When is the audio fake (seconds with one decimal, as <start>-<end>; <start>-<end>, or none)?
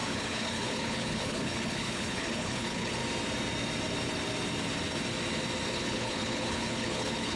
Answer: 0.0-3.0; 5.7-7.4